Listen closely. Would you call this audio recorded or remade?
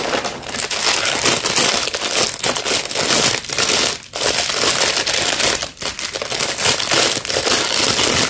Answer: recorded